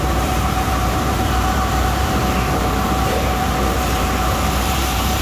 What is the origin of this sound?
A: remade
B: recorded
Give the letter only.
A